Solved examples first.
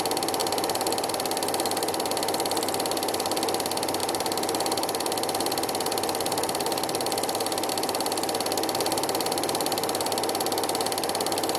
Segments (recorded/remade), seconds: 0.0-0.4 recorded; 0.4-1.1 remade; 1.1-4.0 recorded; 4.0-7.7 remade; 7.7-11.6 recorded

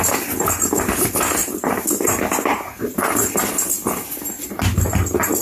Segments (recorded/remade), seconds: 0.0-1.4 recorded; 1.4-3.4 remade; 3.4-5.4 recorded